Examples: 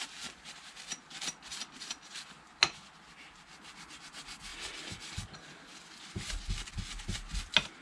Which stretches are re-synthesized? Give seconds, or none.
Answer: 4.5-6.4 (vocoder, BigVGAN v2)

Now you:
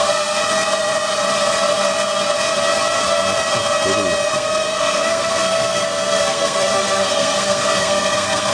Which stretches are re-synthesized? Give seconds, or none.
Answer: 0.0-0.4 (codec, SNAC); 4.3-8.5